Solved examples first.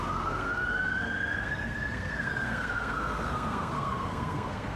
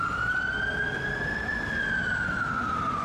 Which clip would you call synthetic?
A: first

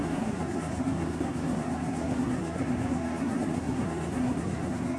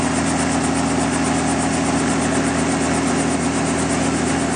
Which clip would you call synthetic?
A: first